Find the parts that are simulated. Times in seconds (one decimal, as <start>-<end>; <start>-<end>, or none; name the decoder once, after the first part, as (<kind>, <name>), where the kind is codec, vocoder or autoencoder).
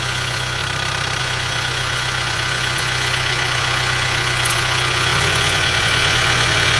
0.0-0.6 (vocoder, Vocos); 1.2-6.8